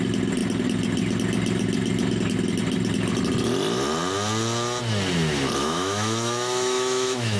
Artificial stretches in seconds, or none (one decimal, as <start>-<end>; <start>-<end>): 5.6-7.4